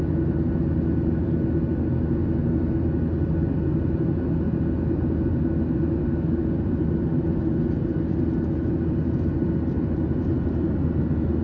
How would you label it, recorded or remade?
recorded